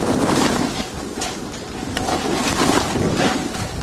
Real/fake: real